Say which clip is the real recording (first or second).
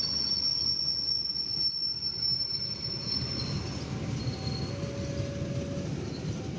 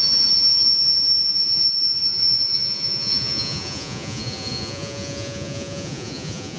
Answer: first